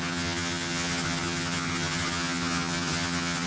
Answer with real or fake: fake